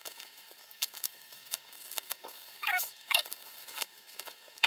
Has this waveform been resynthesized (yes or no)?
yes